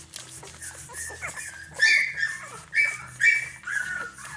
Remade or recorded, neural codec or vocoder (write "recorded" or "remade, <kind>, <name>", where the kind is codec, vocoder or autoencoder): recorded